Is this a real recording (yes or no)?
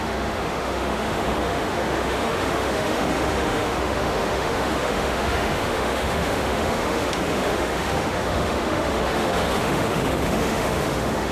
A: no